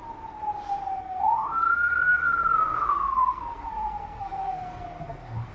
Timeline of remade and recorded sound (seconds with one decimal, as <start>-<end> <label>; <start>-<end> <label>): 0.0-1.0 recorded; 1.0-5.5 remade